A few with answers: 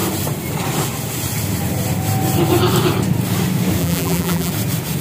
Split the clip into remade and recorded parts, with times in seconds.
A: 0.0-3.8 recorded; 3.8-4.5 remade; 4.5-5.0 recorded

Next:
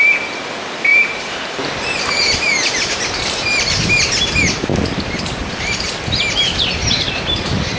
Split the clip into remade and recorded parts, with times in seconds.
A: 0.0-0.9 recorded; 0.9-4.0 remade; 4.0-7.8 recorded

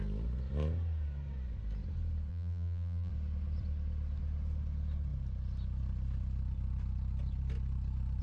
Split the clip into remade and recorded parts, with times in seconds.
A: 0.0-2.3 recorded; 2.3-3.1 remade; 3.1-8.2 recorded

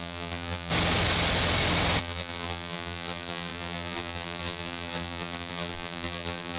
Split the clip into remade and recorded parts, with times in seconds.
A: 0.0-0.7 remade; 0.7-2.0 recorded; 2.0-6.6 remade

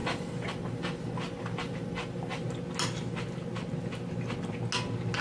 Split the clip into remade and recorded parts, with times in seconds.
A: 0.0-2.4 remade; 2.4-5.2 recorded

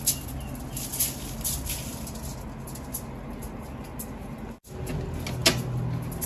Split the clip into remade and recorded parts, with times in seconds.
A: 0.0-6.3 recorded